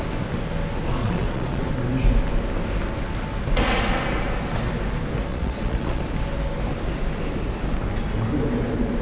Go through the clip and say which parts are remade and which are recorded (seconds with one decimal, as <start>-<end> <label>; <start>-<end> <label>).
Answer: 0.0-1.0 recorded; 1.0-1.7 remade; 1.7-5.3 recorded; 5.3-6.0 remade; 6.0-9.0 recorded